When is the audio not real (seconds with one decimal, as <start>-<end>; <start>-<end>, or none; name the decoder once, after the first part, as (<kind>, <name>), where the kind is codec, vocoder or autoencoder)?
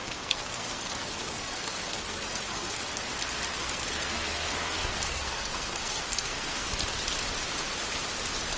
0.0-2.8 (codec, SNAC); 3.5-6.7